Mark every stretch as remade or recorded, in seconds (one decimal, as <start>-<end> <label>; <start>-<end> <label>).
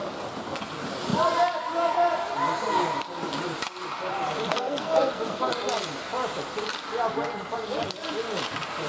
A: 0.0-4.5 recorded; 4.5-5.5 remade; 5.5-8.9 recorded